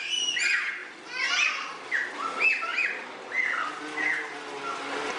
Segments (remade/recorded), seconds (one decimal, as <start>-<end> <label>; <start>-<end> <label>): 0.0-0.8 recorded; 0.8-1.3 remade; 1.3-5.2 recorded

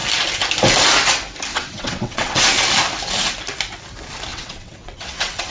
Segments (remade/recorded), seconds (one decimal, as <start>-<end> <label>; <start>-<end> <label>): 0.0-1.5 recorded; 1.5-2.4 remade; 2.4-4.3 recorded; 4.3-5.5 remade

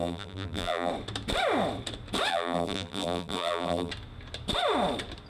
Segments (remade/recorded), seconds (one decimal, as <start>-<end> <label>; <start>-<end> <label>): 0.0-0.9 remade; 0.9-2.3 recorded; 2.3-3.9 remade; 3.9-5.3 recorded

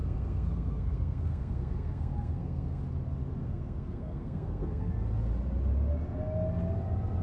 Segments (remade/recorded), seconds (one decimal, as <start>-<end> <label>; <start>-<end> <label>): 0.0-2.8 remade; 2.8-3.4 recorded; 3.4-4.9 remade; 4.9-7.2 recorded

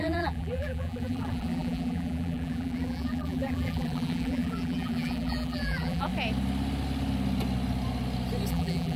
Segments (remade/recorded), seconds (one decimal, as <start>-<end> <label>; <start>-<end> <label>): 0.0-6.1 remade; 6.1-8.5 recorded; 8.5-9.0 remade

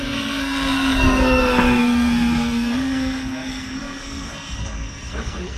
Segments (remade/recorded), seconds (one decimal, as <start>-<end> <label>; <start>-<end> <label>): 0.0-5.6 remade

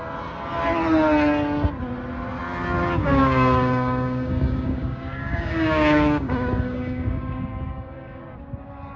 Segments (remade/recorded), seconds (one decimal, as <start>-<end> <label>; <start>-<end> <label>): 0.0-3.0 recorded; 3.0-8.2 remade; 8.2-9.0 recorded